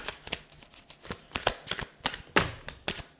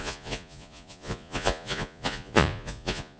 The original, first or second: first